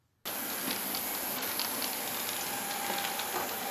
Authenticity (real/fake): real